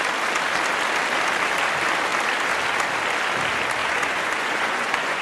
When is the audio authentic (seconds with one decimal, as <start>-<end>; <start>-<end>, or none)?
0.0-3.8